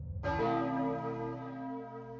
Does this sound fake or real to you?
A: real